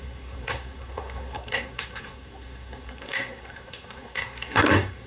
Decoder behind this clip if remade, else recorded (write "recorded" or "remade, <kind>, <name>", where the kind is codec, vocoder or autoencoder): remade, codec, SNAC